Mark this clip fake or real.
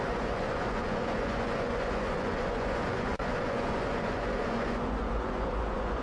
fake